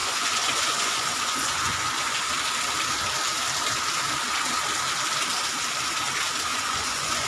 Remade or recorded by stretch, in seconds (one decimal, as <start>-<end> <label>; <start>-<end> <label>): 0.0-2.3 remade; 2.3-6.5 recorded; 6.5-7.3 remade